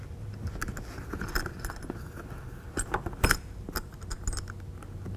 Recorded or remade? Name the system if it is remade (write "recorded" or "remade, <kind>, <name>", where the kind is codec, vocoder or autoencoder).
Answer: recorded